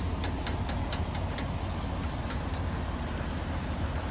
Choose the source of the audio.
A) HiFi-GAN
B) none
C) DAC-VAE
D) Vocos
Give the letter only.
B